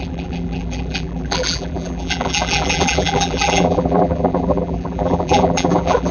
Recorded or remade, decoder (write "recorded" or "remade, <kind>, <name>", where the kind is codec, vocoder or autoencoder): remade, vocoder, BigVGAN v2